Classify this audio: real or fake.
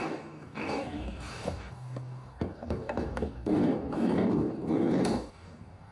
fake